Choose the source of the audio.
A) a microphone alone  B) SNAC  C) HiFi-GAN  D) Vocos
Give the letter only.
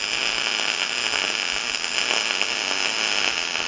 A